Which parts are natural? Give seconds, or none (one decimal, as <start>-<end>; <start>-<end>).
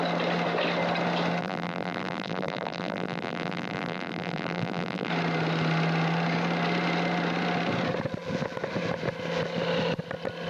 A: 0.0-1.4; 5.1-10.5